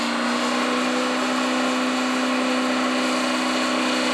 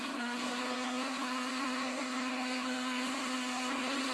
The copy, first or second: second